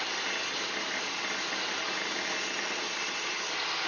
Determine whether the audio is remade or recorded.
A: recorded